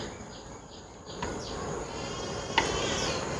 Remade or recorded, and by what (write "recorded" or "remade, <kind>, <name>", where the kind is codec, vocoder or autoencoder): recorded